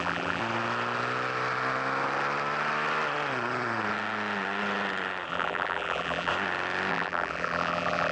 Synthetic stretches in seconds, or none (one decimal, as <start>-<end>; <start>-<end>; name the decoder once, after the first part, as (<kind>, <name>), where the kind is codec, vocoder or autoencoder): 0.0-0.4 (vocoder, BigVGAN v2); 5.3-6.3; 6.9-8.1